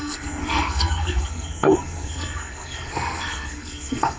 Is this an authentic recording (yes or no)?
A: no